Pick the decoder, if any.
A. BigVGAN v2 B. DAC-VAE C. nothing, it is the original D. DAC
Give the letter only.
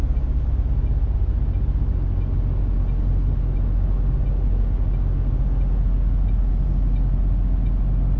C